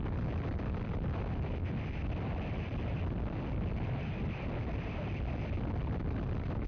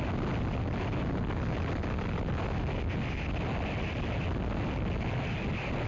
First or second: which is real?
second